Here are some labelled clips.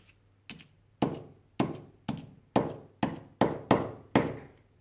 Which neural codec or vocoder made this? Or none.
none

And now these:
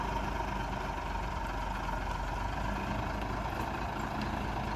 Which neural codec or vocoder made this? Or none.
none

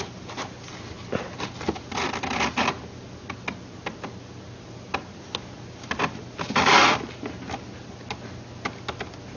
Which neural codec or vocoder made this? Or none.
none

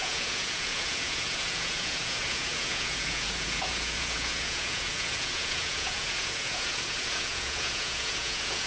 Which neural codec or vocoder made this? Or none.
vocoder, Vocos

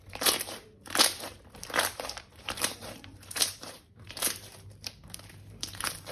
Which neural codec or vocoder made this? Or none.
vocoder, BigVGAN v2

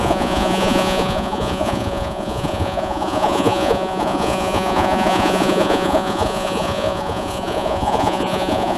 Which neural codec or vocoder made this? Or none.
vocoder, Vocos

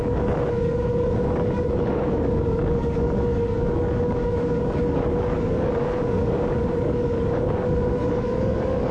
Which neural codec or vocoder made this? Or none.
codec, DAC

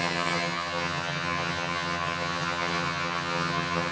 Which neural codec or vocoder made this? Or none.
vocoder, HiFi-GAN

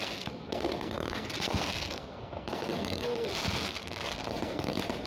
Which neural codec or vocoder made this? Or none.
codec, SNAC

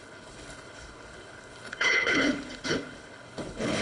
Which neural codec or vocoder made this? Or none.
codec, HILCodec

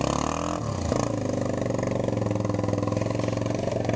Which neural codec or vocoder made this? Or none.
none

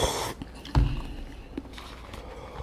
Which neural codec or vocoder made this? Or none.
none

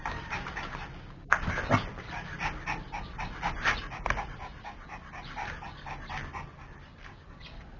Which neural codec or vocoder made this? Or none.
none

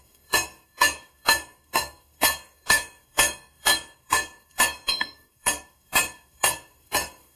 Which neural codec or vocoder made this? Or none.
codec, SNAC